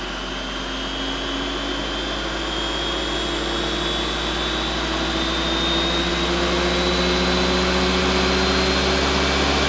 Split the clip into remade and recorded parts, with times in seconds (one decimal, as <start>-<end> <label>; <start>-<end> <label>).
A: 0.0-9.7 recorded